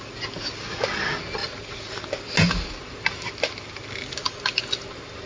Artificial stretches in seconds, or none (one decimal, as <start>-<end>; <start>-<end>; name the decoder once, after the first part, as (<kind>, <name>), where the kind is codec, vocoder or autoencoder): none